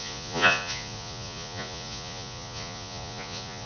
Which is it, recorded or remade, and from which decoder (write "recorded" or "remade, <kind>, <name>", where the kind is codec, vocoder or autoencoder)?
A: remade, vocoder, Vocos